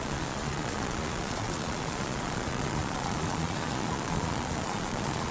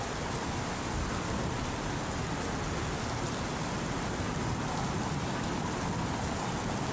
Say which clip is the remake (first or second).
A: first